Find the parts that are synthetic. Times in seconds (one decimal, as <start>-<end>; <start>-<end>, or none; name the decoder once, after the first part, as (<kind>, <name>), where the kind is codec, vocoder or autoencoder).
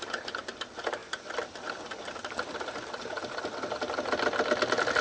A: none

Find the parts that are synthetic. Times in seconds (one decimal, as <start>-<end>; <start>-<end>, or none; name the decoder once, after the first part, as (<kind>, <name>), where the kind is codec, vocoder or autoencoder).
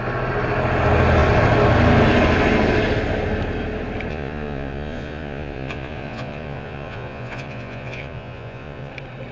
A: 4.1-8.9 (vocoder, Vocos)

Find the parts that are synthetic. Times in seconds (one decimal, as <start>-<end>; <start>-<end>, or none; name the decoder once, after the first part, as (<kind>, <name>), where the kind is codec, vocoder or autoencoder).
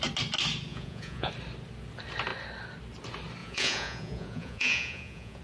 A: 0.7-1.3 (vocoder, Vocos); 3.4-5.4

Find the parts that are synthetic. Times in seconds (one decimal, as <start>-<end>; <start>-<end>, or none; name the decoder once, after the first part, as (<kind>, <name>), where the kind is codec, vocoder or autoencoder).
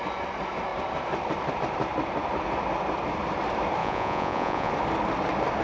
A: 3.8-4.7 (vocoder, Vocos)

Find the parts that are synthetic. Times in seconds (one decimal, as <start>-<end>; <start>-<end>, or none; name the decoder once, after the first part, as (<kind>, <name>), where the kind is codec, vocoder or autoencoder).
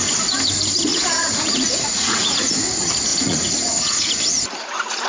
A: 0.9-2.6 (vocoder, Vocos); 3.1-4.1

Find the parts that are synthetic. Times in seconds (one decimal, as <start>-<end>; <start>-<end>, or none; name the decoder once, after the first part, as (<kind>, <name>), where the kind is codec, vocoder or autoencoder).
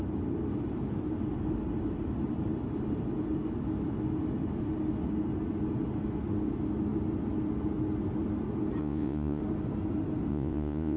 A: 8.8-9.4 (vocoder, Vocos); 10.3-11.0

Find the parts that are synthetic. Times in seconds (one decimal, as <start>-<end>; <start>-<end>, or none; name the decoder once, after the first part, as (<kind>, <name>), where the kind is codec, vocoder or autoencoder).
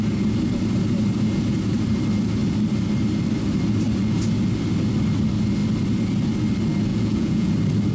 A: 6.9-7.5 (vocoder, Vocos)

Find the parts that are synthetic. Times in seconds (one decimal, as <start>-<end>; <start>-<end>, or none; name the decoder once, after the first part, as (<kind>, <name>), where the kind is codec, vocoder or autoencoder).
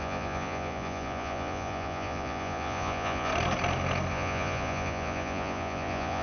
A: 0.0-3.3 (vocoder, Vocos); 4.1-6.2